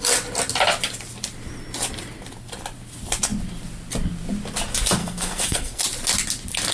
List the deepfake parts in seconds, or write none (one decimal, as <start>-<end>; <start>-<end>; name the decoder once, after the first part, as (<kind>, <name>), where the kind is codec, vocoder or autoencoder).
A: 5.0-5.8 (codec, SNAC)